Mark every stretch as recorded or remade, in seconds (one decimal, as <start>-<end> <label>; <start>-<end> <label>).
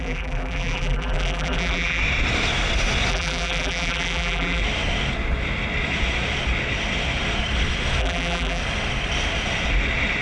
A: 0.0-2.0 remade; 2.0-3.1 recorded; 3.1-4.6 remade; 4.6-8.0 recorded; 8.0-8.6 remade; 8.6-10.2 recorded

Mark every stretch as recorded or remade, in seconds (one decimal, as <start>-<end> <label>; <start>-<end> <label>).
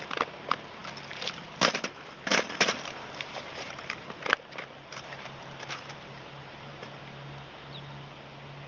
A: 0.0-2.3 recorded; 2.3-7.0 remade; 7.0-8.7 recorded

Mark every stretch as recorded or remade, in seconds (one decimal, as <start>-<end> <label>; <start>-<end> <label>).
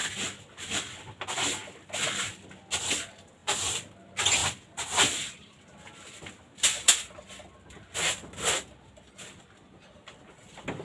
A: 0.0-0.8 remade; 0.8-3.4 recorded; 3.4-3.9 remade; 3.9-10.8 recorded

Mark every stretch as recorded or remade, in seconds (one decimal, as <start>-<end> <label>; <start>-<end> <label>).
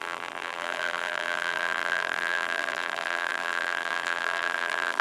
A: 0.0-5.0 remade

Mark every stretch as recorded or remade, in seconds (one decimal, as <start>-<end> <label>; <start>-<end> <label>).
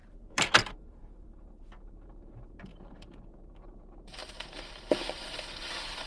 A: 0.0-6.1 remade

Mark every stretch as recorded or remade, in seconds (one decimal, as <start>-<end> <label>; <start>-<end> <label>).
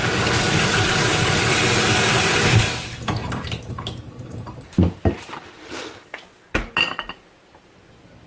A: 0.0-3.2 recorded; 3.2-5.8 remade; 5.8-8.3 recorded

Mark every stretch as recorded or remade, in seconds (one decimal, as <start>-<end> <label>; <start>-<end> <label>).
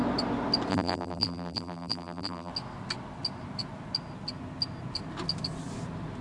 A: 0.0-0.7 recorded; 0.7-2.5 remade; 2.5-6.2 recorded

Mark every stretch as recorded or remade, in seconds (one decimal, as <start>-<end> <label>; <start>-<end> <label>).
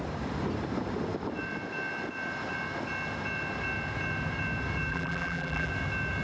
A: 0.0-4.9 recorded; 4.9-5.7 remade; 5.7-6.2 recorded